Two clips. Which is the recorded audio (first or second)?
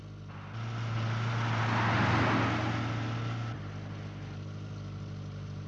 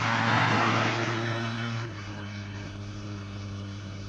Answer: first